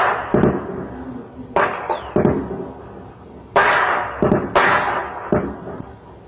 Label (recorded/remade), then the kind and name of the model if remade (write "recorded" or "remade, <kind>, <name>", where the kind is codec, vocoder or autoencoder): recorded